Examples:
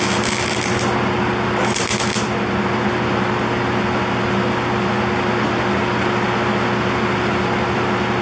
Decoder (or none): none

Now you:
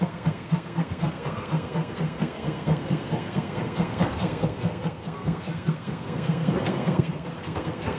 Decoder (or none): codec, SNAC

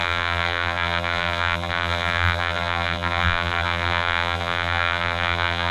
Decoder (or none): vocoder, BigVGAN v2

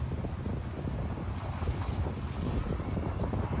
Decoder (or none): none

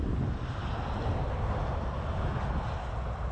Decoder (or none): none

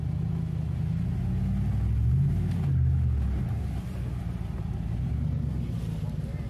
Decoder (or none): none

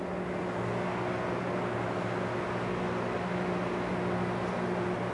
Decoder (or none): none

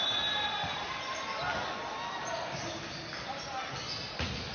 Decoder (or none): none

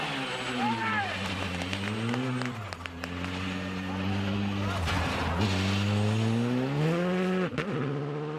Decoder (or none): none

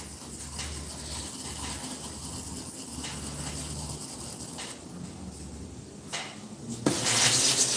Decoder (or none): none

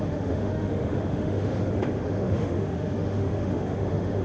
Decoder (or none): autoencoder, DAC-VAE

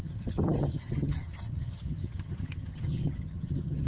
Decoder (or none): vocoder, HiFi-GAN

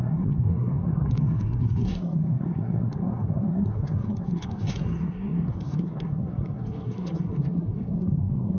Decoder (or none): codec, SNAC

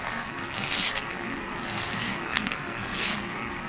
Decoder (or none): codec, SNAC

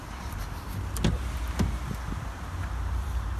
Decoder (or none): none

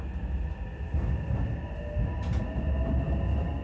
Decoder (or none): none